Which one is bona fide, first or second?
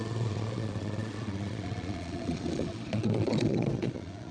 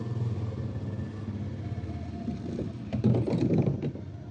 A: second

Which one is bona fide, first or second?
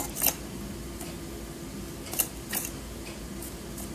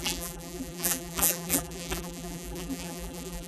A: first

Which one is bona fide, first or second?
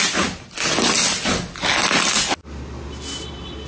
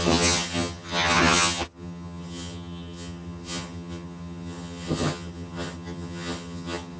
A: first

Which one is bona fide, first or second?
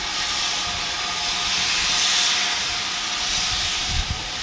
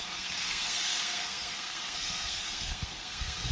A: first